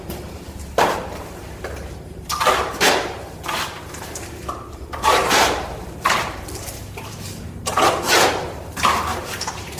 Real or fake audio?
fake